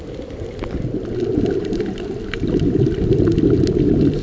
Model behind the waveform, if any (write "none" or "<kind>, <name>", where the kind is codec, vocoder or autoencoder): none